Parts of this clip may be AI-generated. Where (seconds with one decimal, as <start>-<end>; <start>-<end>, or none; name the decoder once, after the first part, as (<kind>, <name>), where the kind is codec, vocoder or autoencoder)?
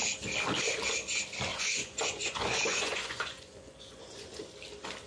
1.5-4.6 (vocoder, Vocos)